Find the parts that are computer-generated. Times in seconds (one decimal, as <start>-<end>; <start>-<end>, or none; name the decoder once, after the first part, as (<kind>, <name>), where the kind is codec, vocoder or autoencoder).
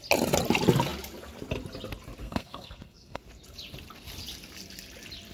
2.2-3.2 (codec, SNAC)